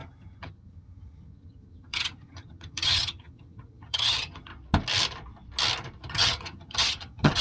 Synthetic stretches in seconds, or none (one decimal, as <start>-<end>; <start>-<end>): 0.0-4.5; 6.1-7.4